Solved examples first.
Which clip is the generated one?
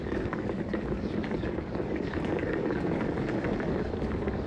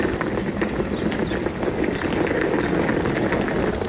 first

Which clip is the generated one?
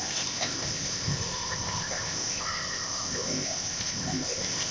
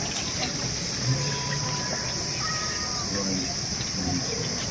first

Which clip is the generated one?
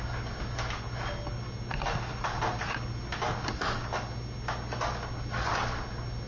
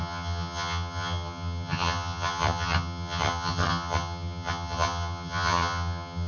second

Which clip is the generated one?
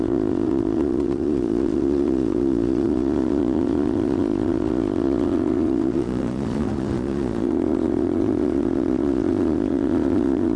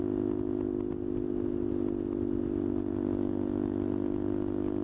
first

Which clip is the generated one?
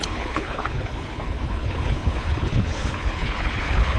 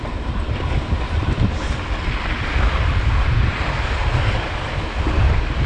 first